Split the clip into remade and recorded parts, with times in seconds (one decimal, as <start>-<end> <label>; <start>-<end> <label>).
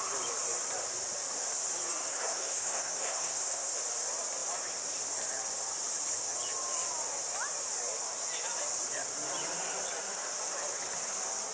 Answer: 0.0-2.1 recorded; 2.1-3.7 remade; 3.7-11.5 recorded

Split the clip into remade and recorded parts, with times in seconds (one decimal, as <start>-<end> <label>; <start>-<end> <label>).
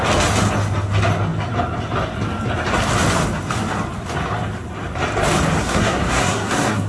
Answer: 0.0-5.6 recorded; 5.6-6.9 remade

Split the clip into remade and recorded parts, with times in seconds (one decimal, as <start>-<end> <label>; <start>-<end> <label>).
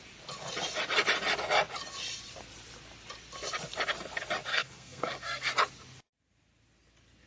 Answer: 0.0-4.5 recorded; 4.5-5.5 remade; 5.5-7.3 recorded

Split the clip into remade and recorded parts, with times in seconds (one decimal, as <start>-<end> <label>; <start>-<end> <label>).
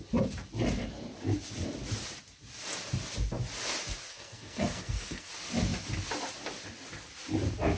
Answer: 0.0-4.1 recorded; 4.1-5.3 remade; 5.3-7.8 recorded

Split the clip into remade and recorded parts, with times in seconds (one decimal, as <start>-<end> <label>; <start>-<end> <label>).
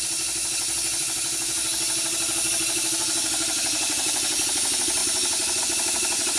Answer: 0.0-6.4 recorded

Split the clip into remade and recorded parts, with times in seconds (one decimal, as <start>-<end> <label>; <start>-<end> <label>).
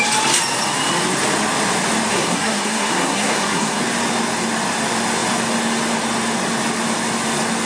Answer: 0.0-2.1 recorded; 2.1-3.8 remade; 3.8-7.7 recorded